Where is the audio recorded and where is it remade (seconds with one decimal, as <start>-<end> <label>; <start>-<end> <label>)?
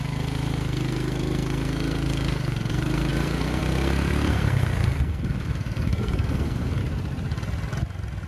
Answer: 0.0-6.8 remade; 6.8-8.3 recorded